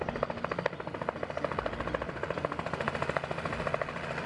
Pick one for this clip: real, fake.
real